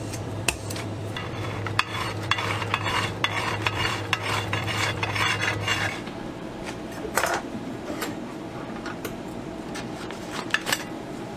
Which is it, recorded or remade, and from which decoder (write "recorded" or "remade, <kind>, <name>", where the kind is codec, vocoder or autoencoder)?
remade, vocoder, BigVGAN v2